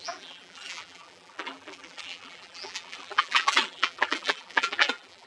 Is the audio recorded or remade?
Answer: remade